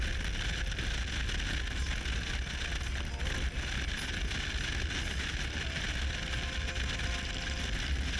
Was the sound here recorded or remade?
recorded